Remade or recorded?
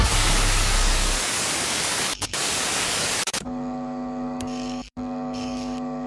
remade